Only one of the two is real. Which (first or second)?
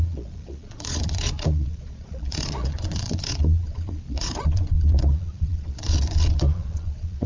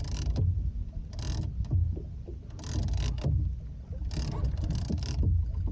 second